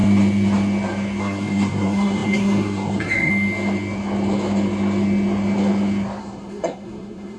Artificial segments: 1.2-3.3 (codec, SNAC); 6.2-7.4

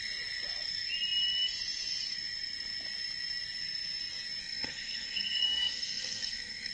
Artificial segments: 4.4-6.7 (codec, SNAC)

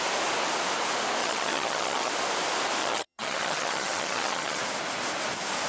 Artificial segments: 1.2-2.1 (vocoder, HiFi-GAN); 2.8-4.6

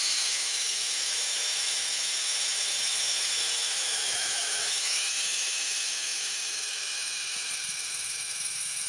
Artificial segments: 0.0-8.9 (autoencoder, DAC-VAE)

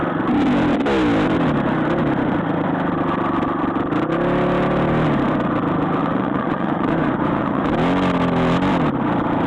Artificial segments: 6.0-7.7 (vocoder, Vocos)

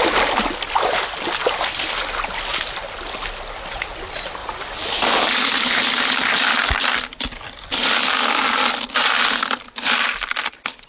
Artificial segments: none

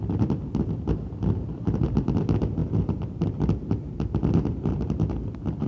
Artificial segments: none

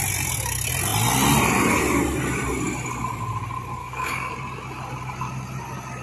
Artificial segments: 3.8-4.3 (codec, DAC)